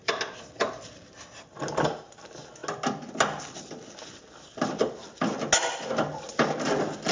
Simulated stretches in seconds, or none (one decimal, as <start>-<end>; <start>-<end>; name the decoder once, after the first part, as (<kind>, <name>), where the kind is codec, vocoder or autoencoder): none